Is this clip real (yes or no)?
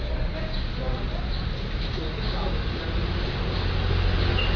yes